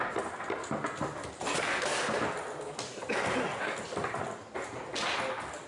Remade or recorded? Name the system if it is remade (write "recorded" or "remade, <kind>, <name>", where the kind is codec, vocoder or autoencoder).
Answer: recorded